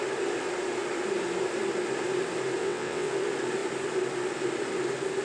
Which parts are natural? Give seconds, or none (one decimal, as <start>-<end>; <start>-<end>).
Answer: 0.0-2.6; 3.1-5.2